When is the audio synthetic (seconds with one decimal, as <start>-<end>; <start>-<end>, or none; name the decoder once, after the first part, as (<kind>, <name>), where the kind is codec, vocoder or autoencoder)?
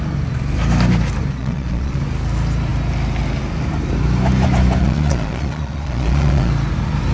1.4-2.0 (vocoder, Vocos); 4.8-6.5